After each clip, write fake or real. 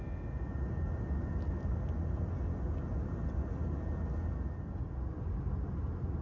real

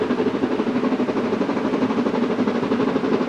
real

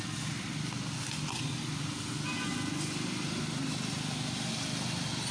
real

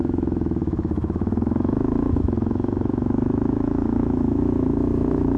fake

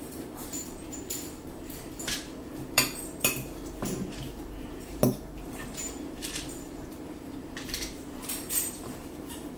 fake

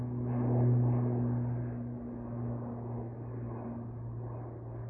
real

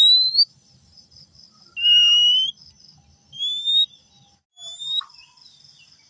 real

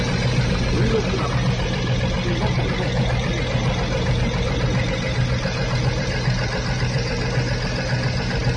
real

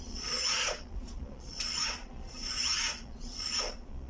fake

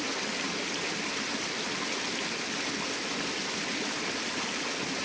real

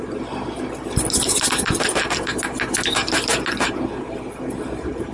real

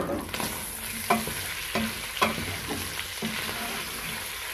real